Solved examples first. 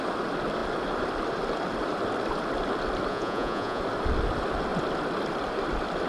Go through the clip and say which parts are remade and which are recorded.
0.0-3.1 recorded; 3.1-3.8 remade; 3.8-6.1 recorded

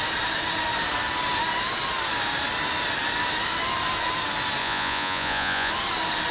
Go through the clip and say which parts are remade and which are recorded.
0.0-4.6 recorded; 4.6-5.7 remade; 5.7-6.3 recorded